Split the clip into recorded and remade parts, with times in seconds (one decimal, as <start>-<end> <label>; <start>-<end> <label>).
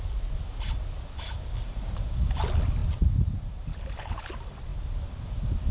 0.0-3.7 recorded; 3.7-4.3 remade; 4.3-5.7 recorded